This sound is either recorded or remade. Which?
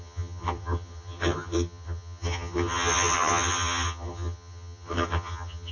remade